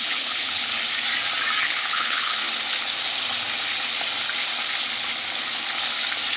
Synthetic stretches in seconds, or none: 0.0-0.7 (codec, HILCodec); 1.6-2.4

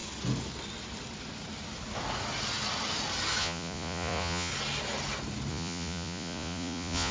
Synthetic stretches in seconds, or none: 3.4-4.5 (vocoder, Vocos); 5.5-7.1

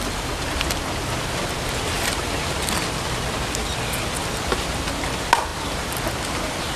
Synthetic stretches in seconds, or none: none

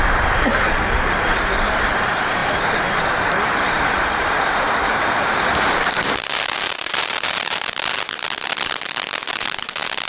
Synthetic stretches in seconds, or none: 0.0-0.5 (vocoder, BigVGAN v2); 1.2-10.1

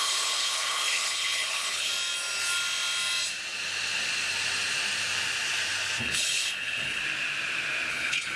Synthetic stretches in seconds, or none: 0.0-1.9 (codec, HILCodec); 6.0-7.0; 7.9-8.4

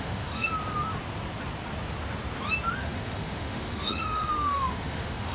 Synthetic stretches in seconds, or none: 0.0-0.5 (autoencoder, DAC-VAE); 2.8-5.3